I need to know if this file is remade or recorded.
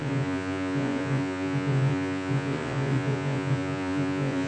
remade